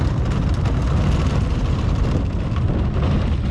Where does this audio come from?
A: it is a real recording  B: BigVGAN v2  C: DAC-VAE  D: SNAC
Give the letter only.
A